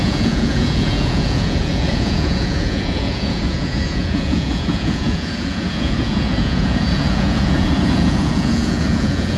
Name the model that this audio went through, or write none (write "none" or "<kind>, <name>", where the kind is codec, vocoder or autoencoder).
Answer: vocoder, Vocos